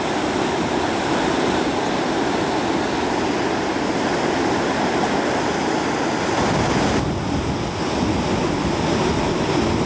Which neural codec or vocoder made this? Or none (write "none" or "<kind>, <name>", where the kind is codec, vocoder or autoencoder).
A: none